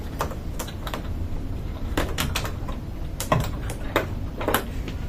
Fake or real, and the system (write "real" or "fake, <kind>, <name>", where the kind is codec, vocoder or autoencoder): fake, vocoder, BigVGAN v2